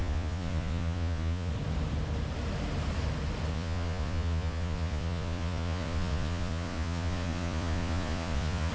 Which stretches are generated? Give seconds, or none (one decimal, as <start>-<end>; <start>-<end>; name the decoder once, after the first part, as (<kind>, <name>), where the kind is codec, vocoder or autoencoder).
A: 0.0-1.5 (vocoder, Vocos); 3.5-8.7